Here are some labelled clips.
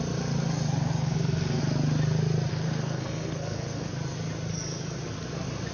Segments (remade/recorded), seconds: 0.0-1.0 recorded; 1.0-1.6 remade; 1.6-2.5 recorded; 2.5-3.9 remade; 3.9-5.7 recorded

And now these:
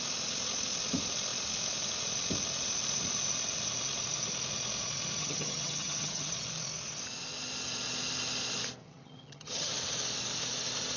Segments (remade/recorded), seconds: 0.0-5.2 recorded; 5.2-6.3 remade; 6.3-8.8 recorded; 8.8-9.7 remade; 9.7-11.0 recorded

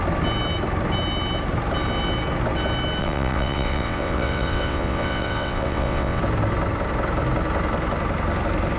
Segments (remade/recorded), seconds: 0.0-3.0 recorded; 3.0-6.2 remade; 6.2-8.8 recorded

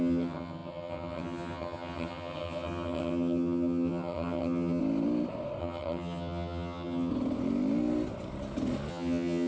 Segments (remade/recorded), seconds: 0.0-4.8 remade; 4.8-5.6 recorded; 5.6-7.1 remade; 7.1-8.9 recorded; 8.9-9.5 remade

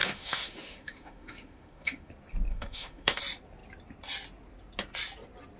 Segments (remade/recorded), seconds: 0.0-2.1 remade; 2.1-2.5 recorded; 2.5-3.2 remade; 3.2-5.6 recorded

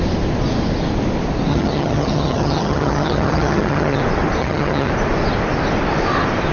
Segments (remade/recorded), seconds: 0.0-1.5 recorded; 1.5-4.0 remade; 4.0-4.4 recorded; 4.4-4.9 remade; 4.9-6.5 recorded

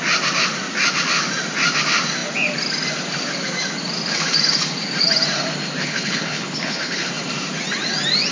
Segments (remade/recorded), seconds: 0.0-5.8 recorded; 5.8-7.1 remade; 7.1-8.3 recorded